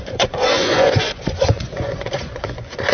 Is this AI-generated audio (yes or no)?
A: yes